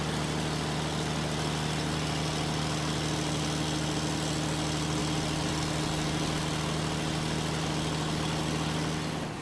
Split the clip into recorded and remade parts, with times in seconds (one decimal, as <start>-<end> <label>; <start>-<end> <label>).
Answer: 0.0-9.4 recorded